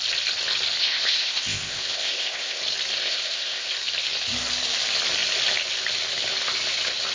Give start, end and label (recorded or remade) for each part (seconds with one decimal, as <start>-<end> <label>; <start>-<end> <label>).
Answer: 0.0-0.8 recorded; 0.8-2.6 remade; 2.6-3.0 recorded; 3.0-3.7 remade; 3.7-7.1 recorded